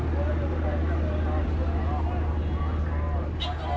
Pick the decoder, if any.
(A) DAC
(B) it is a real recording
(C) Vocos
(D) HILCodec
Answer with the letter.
B